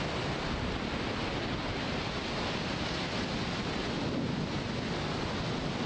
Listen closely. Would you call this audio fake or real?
real